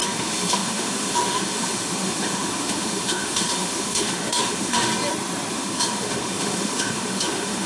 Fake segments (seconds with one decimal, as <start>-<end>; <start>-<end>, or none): 0.0-4.9; 5.5-7.7